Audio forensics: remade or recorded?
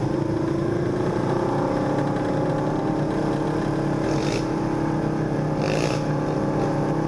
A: recorded